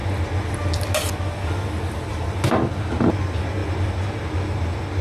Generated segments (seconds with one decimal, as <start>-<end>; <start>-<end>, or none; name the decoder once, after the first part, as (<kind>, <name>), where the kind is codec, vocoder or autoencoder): none

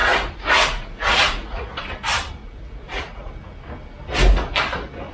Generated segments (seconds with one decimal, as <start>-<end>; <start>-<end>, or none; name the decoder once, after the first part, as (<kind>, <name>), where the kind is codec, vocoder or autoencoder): 0.0-1.8 (vocoder, Vocos); 2.4-3.3

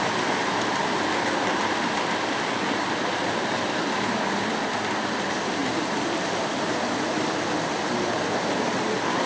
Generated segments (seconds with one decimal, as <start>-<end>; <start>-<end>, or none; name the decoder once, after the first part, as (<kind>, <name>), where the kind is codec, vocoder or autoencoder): none

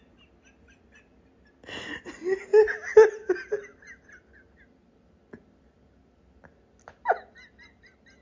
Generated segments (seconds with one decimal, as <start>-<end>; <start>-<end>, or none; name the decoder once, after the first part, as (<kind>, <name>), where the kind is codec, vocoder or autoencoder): none

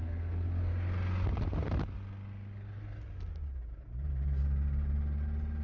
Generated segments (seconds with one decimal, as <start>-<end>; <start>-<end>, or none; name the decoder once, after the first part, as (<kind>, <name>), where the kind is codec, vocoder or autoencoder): 0.0-0.7 (codec, SNAC)

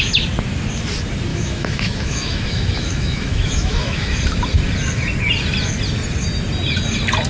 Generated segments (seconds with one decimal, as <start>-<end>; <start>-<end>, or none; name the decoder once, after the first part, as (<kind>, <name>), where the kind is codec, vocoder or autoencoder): 1.3-4.2 (autoencoder, DAC-VAE)

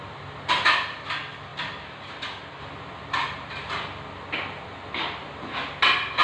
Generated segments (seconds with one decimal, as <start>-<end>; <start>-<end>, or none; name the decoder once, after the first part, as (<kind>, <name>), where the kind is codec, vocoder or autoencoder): none

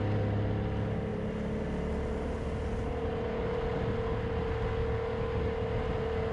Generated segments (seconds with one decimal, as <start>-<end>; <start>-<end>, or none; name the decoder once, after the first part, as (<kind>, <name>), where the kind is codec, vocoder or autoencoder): none